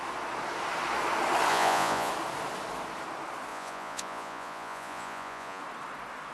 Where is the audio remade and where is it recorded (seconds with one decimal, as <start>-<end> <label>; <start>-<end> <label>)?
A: 0.0-1.5 recorded; 1.5-2.1 remade; 2.1-3.5 recorded; 3.5-5.6 remade; 5.6-6.3 recorded